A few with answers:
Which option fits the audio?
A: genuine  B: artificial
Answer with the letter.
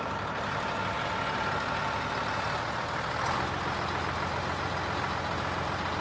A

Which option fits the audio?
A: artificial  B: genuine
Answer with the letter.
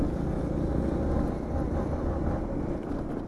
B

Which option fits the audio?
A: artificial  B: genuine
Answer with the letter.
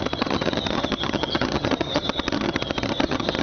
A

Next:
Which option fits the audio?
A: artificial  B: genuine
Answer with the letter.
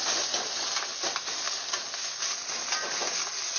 B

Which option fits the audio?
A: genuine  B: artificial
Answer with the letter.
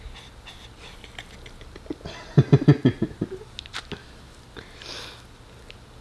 A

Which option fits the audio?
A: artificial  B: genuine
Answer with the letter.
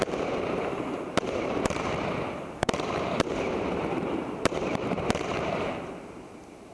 A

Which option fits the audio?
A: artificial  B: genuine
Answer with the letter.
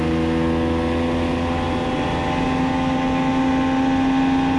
B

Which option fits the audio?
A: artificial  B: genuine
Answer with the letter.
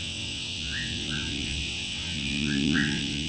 A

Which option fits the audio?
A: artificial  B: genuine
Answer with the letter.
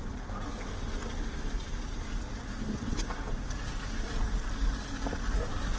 B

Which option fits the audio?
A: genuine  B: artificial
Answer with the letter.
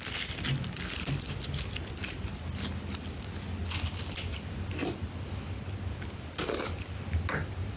A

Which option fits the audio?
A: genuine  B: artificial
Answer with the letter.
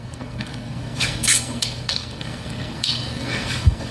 B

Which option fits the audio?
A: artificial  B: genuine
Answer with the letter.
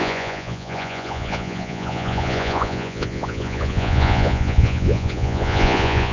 A